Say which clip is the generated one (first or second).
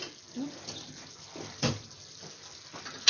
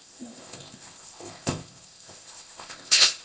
second